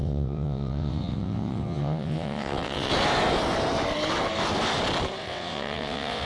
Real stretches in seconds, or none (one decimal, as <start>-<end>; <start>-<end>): 2.9-5.2